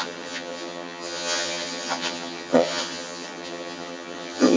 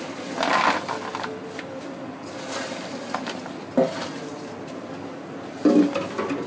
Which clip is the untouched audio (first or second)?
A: second